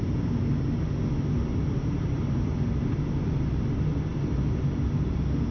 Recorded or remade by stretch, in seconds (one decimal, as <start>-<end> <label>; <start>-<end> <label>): 0.0-5.5 recorded